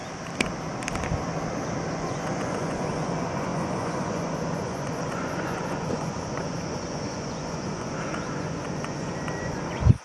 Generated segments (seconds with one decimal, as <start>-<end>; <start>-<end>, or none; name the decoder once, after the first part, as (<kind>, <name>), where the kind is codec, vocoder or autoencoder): 1.9-10.0 (vocoder, Vocos)